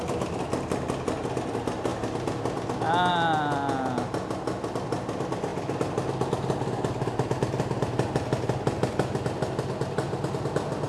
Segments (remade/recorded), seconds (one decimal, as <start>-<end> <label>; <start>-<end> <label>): 0.0-10.9 recorded